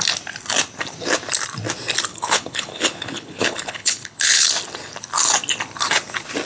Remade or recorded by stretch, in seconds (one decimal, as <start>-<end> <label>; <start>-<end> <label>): 0.0-2.1 recorded; 2.1-4.5 remade; 4.5-6.4 recorded